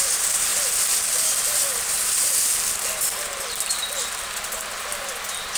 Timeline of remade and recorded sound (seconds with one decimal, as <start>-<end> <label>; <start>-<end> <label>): 0.0-5.6 recorded